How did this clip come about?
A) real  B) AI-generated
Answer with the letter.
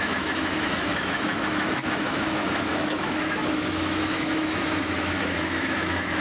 B